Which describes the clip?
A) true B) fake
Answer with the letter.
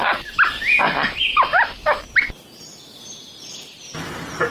A